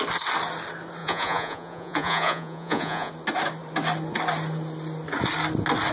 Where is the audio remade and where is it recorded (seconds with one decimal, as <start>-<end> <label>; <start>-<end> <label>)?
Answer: 0.0-1.0 recorded; 1.0-3.1 remade; 3.1-5.9 recorded